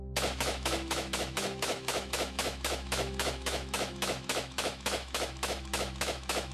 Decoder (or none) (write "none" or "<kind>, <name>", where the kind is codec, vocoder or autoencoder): autoencoder, DAC-VAE